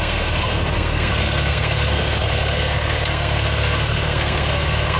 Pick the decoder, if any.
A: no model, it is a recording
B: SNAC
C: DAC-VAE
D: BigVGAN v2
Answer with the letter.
B